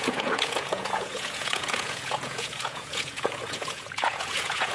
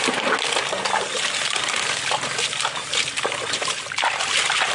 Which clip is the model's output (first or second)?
first